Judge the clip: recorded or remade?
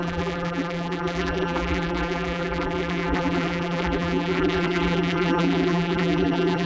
remade